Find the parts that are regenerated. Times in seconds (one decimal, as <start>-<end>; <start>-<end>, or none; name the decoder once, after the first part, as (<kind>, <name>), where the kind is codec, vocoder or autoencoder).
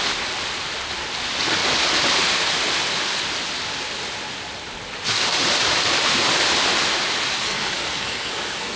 7.4-8.8 (codec, SNAC)